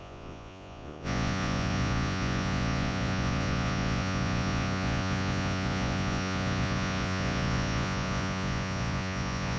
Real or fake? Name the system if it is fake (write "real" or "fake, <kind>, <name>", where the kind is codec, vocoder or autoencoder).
fake, vocoder, Vocos